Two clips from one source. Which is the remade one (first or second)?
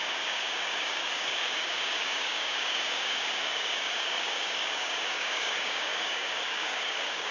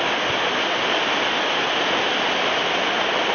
first